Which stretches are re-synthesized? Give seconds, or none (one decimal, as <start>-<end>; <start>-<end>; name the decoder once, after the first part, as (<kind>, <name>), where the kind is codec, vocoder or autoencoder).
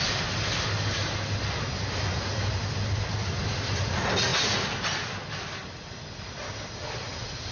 none